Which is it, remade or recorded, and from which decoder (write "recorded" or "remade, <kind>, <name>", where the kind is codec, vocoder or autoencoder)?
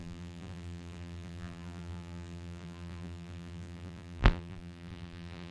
remade, vocoder, BigVGAN v2